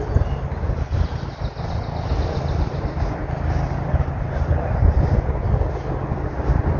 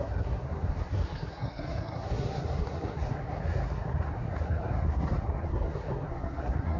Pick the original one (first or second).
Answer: first